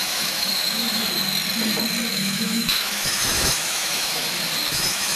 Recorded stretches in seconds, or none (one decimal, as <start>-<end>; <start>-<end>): 1.0-2.1; 4.2-4.7